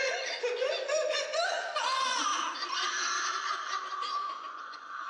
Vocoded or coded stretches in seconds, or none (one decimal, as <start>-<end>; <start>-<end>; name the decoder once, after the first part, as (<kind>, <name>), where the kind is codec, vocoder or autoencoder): 0.0-2.3 (vocoder, Vocos); 3.8-5.1